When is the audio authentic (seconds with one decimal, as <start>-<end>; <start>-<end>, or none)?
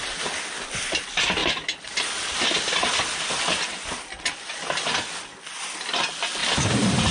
0.0-6.4